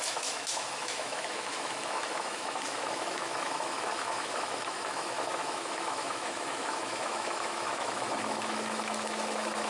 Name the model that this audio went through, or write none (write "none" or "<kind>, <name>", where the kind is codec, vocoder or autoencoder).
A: autoencoder, DAC-VAE